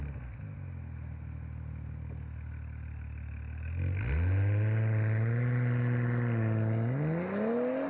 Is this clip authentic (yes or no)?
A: yes